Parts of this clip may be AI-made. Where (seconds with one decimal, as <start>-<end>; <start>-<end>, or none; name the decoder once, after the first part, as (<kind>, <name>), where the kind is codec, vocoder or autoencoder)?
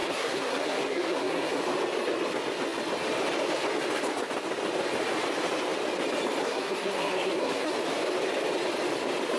0.0-1.6 (codec, SNAC); 6.4-7.7